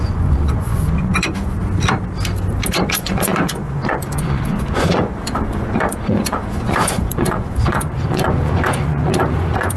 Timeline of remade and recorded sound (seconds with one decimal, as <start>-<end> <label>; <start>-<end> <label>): 0.0-1.6 remade; 1.6-2.7 recorded; 2.7-9.8 remade